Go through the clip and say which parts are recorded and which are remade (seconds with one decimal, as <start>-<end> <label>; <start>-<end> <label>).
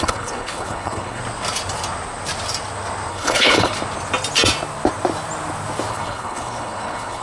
0.0-1.2 remade; 1.2-3.1 recorded; 3.1-3.7 remade; 3.7-5.9 recorded; 5.9-7.2 remade